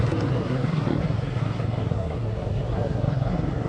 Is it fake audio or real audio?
fake